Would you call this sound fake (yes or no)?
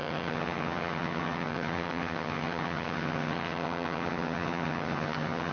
yes